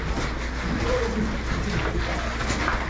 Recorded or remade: recorded